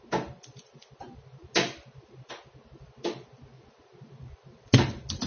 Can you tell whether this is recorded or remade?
recorded